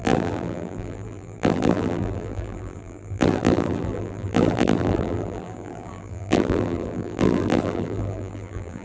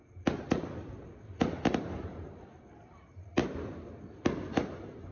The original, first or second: second